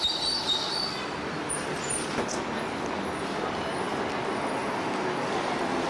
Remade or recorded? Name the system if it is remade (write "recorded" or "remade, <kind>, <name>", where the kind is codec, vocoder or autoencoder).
recorded